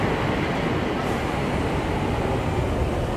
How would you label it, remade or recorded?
recorded